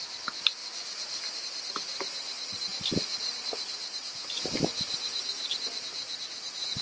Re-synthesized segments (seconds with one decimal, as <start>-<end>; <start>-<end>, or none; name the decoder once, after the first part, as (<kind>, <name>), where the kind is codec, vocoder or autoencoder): none